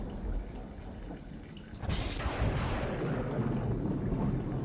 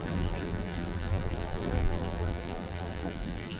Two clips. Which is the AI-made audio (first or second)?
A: second